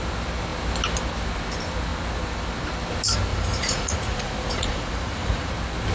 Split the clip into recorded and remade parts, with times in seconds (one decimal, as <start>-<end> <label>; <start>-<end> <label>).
0.0-3.3 recorded; 3.3-5.5 remade; 5.5-5.9 recorded